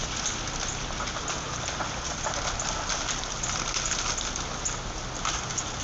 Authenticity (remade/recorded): recorded